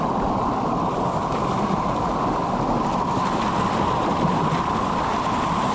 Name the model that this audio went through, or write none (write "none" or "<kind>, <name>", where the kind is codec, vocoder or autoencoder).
none